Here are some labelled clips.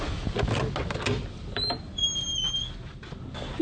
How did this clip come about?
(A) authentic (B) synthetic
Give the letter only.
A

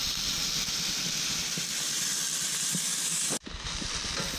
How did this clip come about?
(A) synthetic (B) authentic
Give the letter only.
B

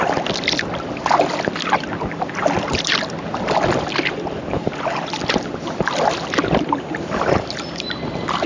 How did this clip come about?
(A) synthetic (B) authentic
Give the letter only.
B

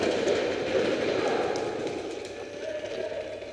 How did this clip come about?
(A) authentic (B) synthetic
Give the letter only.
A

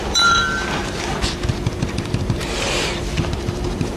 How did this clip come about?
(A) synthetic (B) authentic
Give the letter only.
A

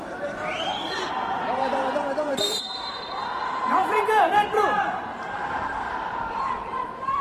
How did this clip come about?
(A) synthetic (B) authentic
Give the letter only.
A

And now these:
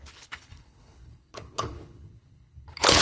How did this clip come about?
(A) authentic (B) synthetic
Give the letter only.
B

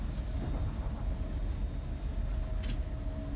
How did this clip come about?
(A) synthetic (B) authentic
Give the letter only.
B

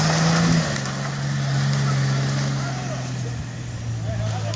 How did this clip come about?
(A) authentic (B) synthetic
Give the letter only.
A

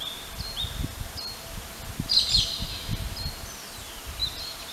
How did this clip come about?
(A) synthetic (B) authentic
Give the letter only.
B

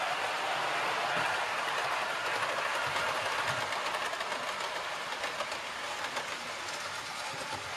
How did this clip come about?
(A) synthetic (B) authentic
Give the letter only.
B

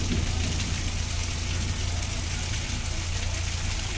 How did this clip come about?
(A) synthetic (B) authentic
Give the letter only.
B